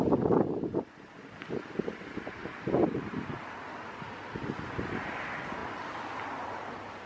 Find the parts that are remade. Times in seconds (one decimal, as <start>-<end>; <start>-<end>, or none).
none